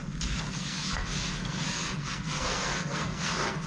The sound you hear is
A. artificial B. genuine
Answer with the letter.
A